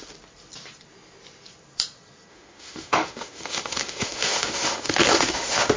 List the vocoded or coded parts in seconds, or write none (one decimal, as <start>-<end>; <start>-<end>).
2.3-5.8